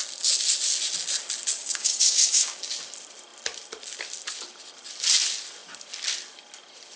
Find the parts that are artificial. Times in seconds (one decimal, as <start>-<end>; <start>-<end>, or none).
1.6-2.6